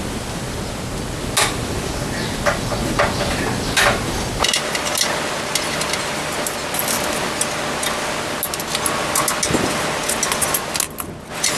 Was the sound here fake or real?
real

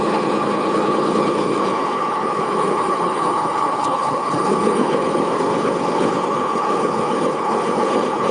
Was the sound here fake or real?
fake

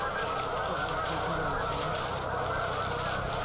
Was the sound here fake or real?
real